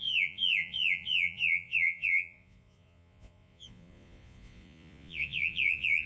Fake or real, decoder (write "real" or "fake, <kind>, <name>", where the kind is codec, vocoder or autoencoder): fake, vocoder, Vocos